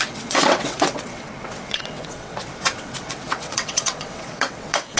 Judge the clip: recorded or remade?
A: remade